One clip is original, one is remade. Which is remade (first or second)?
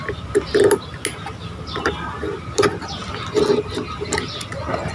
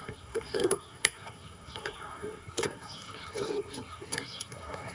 second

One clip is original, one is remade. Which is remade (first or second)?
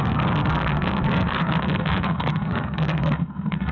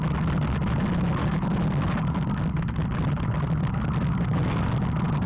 first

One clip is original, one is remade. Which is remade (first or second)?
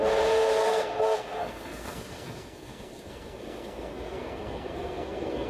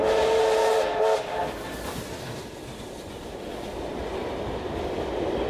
first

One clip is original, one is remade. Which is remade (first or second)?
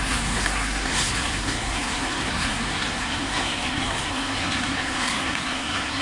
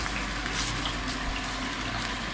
first